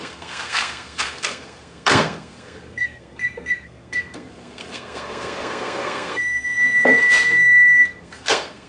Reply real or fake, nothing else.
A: fake